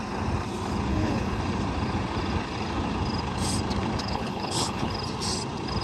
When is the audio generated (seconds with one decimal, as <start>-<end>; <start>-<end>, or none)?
0.9-1.4; 4.0-4.9